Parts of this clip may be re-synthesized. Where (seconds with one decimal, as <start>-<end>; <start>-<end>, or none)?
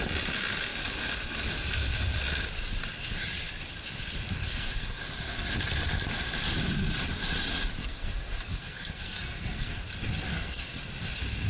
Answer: 4.4-5.0; 7.8-9.8; 10.3-10.8